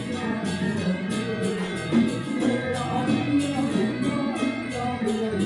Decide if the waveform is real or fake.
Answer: fake